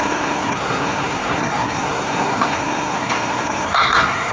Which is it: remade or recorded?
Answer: remade